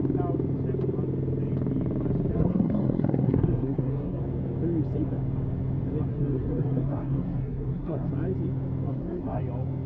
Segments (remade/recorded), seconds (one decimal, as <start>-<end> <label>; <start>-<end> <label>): 0.0-2.3 recorded; 2.3-4.2 remade; 4.2-6.1 recorded; 6.1-8.1 remade; 8.1-8.9 recorded; 8.9-9.4 remade; 9.4-9.9 recorded